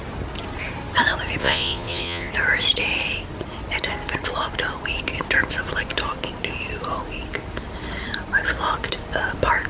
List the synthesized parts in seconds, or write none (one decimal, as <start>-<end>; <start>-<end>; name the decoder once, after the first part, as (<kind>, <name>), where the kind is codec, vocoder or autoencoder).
1.4-2.3 (vocoder, Vocos)